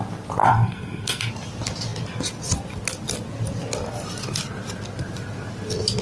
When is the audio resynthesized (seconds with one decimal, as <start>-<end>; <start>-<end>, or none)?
0.4-1.3